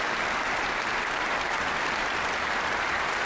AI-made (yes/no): no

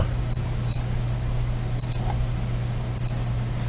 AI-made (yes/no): no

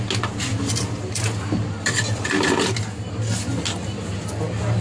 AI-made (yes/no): no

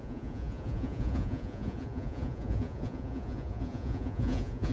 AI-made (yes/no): yes